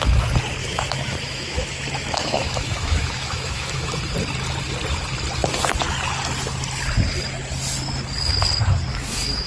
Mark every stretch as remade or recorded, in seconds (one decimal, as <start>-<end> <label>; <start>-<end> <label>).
0.0-0.6 recorded; 0.6-4.0 remade; 4.0-8.9 recorded; 8.9-9.5 remade